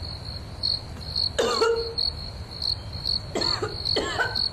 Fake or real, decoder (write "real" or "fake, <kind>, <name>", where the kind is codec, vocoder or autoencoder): real